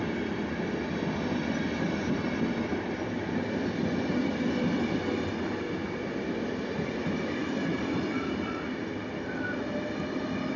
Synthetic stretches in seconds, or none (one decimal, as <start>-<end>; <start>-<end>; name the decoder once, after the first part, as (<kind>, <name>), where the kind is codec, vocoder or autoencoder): none